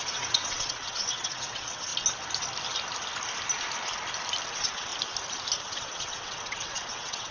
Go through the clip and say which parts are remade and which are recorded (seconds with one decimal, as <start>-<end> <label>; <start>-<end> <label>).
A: 0.0-1.9 remade; 1.9-4.5 recorded; 4.5-4.9 remade; 4.9-5.6 recorded; 5.6-7.3 remade